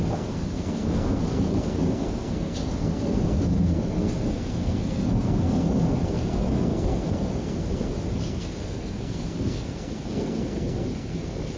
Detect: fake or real fake